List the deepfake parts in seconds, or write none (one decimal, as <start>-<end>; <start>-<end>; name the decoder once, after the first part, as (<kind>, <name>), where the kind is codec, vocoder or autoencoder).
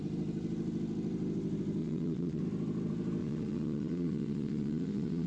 1.8-2.4 (vocoder, Vocos); 3.2-5.3